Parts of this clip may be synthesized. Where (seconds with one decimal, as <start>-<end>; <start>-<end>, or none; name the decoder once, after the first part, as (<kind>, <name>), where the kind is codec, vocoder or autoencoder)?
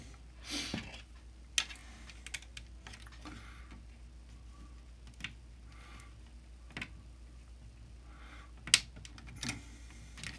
none